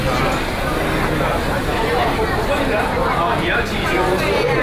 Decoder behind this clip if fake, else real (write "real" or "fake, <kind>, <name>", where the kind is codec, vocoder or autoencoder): real